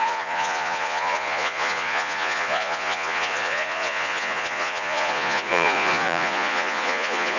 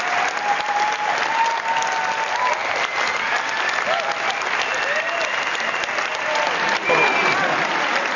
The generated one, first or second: first